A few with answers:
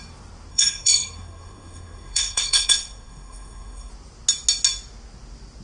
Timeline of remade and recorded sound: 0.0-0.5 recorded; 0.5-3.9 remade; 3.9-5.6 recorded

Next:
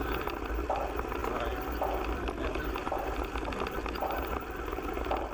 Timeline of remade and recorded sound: 0.0-5.3 recorded

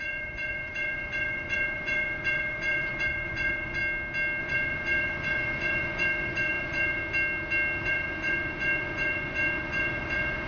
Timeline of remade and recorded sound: 0.0-3.8 remade; 3.8-4.4 recorded; 4.4-7.0 remade; 7.0-7.8 recorded; 7.8-10.5 remade

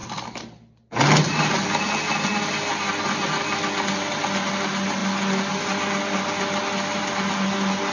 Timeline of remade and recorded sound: 0.0-7.9 recorded

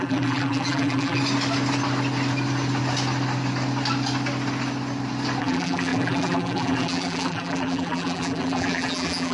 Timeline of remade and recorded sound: 0.0-1.2 remade; 1.2-5.4 recorded; 5.4-9.3 remade

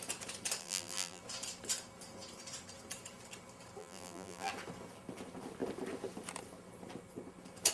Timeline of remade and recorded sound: 0.0-0.6 recorded; 0.6-1.2 remade; 1.2-3.8 recorded; 3.8-4.5 remade; 4.5-7.7 recorded

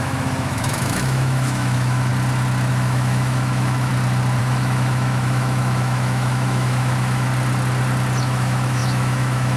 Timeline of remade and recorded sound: 0.0-2.1 remade; 2.1-2.7 recorded; 2.7-3.9 remade; 3.9-4.4 recorded; 4.4-7.3 remade; 7.3-8.2 recorded; 8.2-9.6 remade